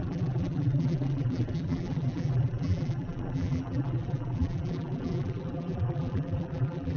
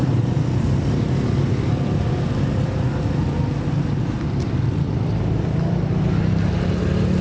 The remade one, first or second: first